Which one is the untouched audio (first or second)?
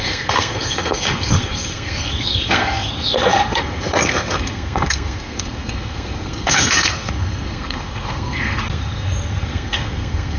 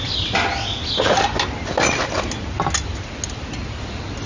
second